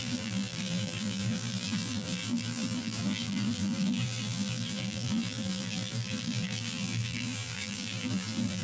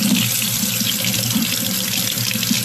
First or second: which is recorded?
second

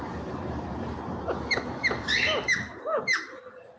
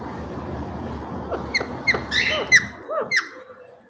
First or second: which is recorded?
second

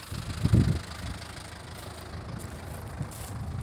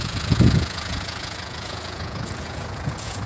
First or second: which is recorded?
first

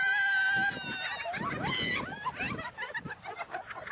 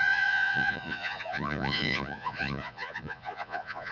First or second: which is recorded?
first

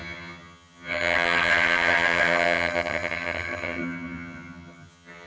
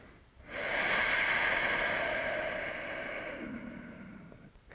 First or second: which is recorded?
second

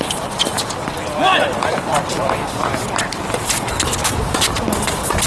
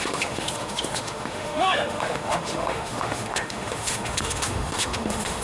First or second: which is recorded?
first